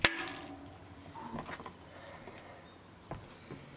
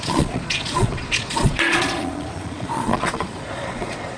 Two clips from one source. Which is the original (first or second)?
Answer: first